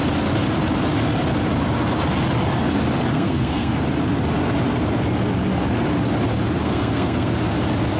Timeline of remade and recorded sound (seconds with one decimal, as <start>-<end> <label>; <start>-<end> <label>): 0.0-3.1 recorded; 3.1-3.7 remade; 3.7-6.6 recorded; 6.6-7.3 remade; 7.3-8.0 recorded